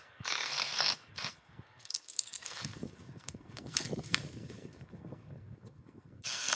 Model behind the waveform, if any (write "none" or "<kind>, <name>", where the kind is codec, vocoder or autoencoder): codec, SNAC